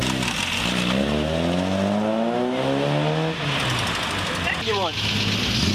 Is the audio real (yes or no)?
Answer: yes